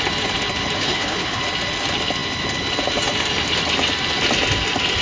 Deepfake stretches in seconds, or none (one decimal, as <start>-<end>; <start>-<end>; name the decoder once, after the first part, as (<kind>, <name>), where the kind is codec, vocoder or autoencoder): 0.8-1.4 (codec, HILCodec)